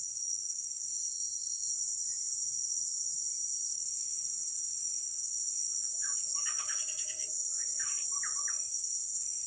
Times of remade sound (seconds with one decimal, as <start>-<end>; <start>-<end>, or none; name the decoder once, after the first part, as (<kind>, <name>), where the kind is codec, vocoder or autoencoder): 0.0-1.1 (codec, SNAC); 3.7-7.9; 8.5-9.5

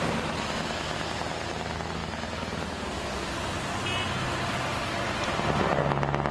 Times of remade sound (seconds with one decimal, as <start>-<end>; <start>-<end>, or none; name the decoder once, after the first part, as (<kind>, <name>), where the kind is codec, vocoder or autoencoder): none

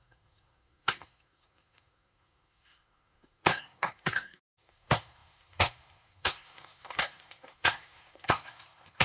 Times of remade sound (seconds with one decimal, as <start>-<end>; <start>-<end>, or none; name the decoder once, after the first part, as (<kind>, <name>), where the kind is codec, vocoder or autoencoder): 0.0-9.0 (codec, SNAC)

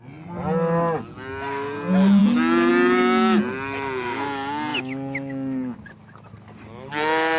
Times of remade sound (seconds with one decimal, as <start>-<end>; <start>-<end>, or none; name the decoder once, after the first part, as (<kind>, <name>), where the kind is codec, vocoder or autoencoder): none

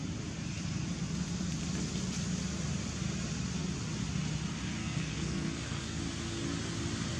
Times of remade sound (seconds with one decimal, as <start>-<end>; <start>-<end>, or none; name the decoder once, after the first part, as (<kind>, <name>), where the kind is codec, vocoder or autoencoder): 4.8-6.0 (codec, SNAC)